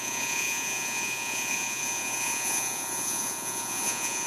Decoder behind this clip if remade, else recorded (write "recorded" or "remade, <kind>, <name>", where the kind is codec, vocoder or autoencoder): remade, vocoder, Vocos